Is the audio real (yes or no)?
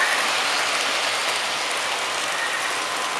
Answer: yes